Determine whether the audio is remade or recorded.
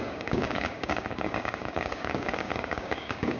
remade